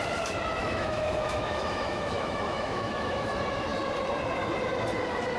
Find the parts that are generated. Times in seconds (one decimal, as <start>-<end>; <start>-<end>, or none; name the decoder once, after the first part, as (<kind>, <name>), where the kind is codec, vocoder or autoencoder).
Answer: 0.6-3.3 (autoencoder, DAC-VAE)